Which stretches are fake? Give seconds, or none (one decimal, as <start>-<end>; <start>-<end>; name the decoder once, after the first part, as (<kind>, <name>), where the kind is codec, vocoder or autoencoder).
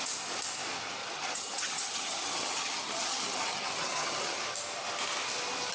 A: 1.0-4.4 (vocoder, HiFi-GAN)